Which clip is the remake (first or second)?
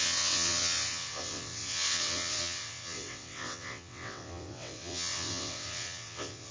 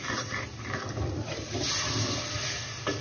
first